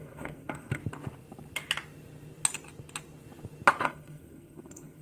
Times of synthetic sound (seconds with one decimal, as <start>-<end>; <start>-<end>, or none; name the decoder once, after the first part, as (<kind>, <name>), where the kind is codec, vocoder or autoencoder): 0.0-0.8 (codec, SNAC); 3.8-5.0